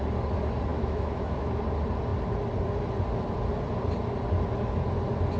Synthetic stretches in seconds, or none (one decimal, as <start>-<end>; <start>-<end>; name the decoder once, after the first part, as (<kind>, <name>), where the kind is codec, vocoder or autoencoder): 0.7-1.6 (autoencoder, DAC-VAE)